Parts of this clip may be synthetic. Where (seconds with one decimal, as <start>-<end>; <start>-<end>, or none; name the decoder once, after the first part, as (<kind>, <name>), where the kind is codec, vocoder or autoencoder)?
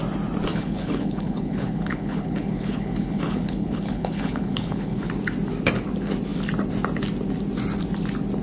0.5-5.1 (codec, HILCodec)